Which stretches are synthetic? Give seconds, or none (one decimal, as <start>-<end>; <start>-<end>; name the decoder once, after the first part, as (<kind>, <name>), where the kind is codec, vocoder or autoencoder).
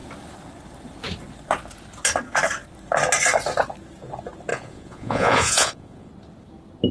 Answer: 4.5-6.1 (vocoder, Vocos)